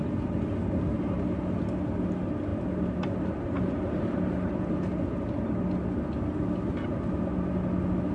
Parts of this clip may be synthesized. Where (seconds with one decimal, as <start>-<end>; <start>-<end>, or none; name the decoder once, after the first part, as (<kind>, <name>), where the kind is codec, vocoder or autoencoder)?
none